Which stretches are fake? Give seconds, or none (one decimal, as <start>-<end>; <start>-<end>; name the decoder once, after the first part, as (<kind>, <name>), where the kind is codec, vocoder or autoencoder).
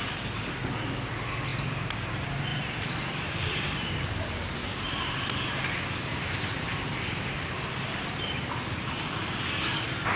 1.5-2.1 (vocoder, BigVGAN v2); 2.5-4.2; 6.1-6.8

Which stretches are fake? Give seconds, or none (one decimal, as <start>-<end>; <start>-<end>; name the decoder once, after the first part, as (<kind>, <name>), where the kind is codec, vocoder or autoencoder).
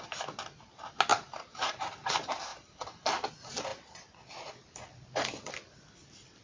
1.1-1.8 (vocoder, BigVGAN v2); 2.5-3.3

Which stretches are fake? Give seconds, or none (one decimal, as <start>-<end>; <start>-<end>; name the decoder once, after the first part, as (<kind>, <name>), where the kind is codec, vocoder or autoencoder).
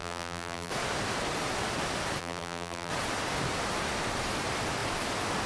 0.0-0.7 (vocoder, BigVGAN v2); 2.2-2.9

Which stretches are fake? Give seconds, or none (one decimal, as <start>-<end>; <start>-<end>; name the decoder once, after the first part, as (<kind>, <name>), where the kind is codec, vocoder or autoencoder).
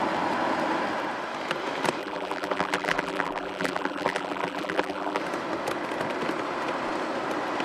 2.0-5.2 (vocoder, BigVGAN v2)